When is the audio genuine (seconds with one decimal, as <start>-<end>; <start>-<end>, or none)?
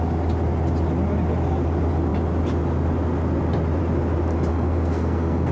0.0-4.5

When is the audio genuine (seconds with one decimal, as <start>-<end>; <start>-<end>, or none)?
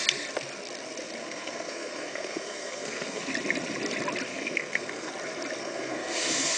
0.0-1.2; 3.2-4.3; 5.1-5.6